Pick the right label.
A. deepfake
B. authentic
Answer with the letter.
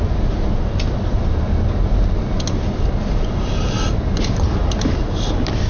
B